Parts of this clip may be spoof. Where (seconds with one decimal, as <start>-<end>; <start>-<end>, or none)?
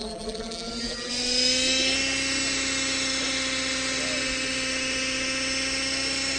0.0-1.1